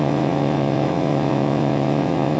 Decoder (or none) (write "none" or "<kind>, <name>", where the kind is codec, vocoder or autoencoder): vocoder, WaveNeXt